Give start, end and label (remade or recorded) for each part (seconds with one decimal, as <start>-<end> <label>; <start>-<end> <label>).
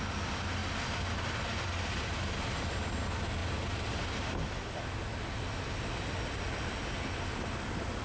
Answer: 0.0-8.0 recorded